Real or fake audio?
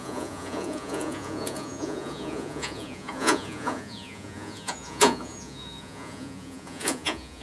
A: fake